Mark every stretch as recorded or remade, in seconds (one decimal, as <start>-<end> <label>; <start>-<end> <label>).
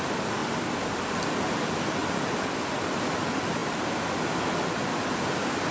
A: 0.0-5.7 recorded